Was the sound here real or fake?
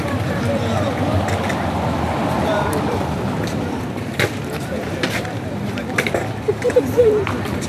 fake